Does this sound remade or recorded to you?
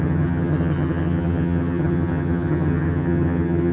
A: remade